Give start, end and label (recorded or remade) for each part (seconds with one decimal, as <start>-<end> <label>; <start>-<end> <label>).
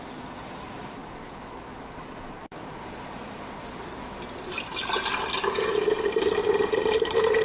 0.0-1.0 remade; 1.0-5.1 recorded; 5.1-7.4 remade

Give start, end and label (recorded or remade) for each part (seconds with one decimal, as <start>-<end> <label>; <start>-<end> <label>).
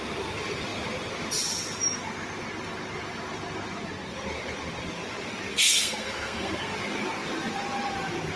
0.0-5.5 recorded; 5.5-6.7 remade; 6.7-8.4 recorded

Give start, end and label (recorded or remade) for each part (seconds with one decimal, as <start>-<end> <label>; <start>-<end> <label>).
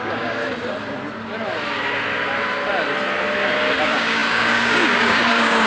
0.0-0.4 remade; 0.4-3.8 recorded; 3.8-5.7 remade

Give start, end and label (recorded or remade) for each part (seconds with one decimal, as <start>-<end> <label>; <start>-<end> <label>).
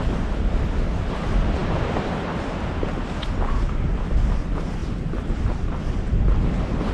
0.0-4.8 recorded; 4.8-6.5 remade; 6.5-6.9 recorded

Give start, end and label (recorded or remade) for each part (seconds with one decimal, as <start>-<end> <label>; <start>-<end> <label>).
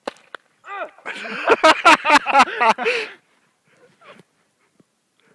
0.0-5.3 recorded